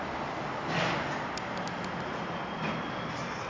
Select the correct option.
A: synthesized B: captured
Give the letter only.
B